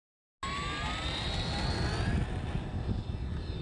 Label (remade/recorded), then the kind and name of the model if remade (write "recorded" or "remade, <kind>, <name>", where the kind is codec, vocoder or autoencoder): recorded